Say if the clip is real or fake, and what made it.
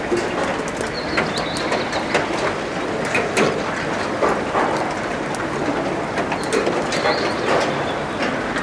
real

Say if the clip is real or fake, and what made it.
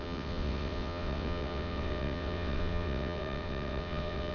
fake, vocoder, WaveNeXt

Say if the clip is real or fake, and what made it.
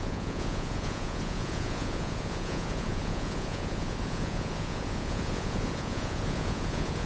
fake, vocoder, Vocos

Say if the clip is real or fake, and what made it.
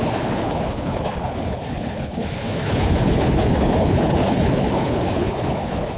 fake, codec, HILCodec